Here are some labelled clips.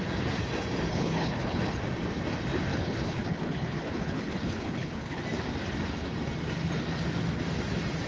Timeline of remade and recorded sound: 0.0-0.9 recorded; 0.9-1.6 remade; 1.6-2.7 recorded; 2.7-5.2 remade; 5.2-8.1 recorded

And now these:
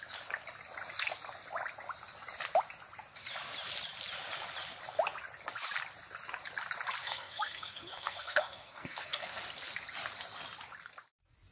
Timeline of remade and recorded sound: 0.0-7.0 recorded; 7.0-9.4 remade; 9.4-11.5 recorded